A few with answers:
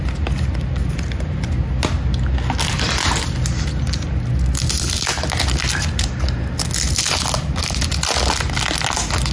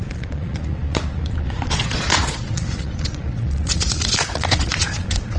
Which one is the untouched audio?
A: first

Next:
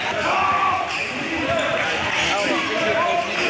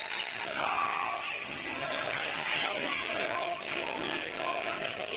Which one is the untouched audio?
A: first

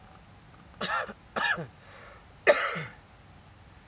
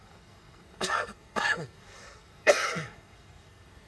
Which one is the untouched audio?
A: first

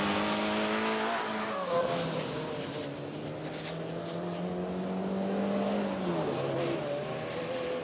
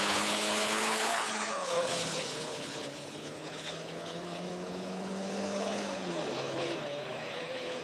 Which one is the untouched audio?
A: first